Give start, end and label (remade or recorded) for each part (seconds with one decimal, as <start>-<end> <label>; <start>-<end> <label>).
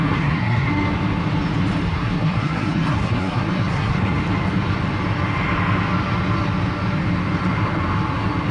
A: 0.0-0.7 remade; 0.7-1.9 recorded; 1.9-4.2 remade; 4.2-8.5 recorded